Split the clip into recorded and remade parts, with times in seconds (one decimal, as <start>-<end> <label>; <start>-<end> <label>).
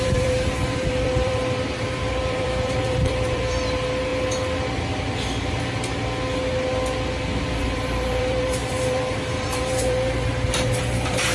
0.0-4.1 remade; 4.1-7.6 recorded; 7.6-11.3 remade